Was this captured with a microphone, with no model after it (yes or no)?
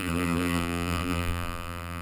no